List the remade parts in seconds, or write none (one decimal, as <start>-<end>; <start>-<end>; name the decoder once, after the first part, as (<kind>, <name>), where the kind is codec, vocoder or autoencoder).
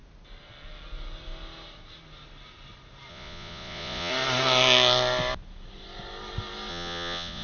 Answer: 3.1-4.1 (vocoder, Vocos); 6.7-7.4